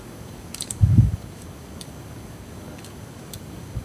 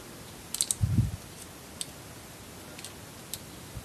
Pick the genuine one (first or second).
second